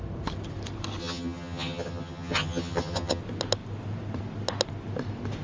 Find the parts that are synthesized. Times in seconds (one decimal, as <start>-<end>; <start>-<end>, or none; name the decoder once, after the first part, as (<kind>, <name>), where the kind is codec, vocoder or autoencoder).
1.0-3.2 (vocoder, HiFi-GAN)